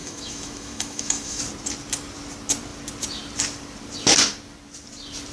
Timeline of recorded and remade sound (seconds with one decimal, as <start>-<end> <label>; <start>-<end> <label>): 0.0-1.4 remade; 1.4-5.3 recorded